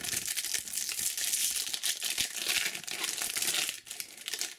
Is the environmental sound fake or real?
real